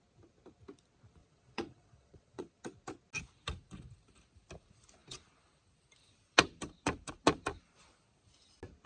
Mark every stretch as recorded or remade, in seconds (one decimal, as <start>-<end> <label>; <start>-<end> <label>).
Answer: 0.0-1.2 recorded; 1.2-2.6 remade; 2.6-8.9 recorded